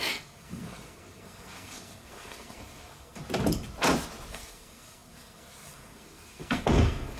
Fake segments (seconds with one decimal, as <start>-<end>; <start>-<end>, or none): 0.0-3.2; 4.3-7.2